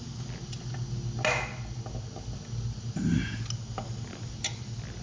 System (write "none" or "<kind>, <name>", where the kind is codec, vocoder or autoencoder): none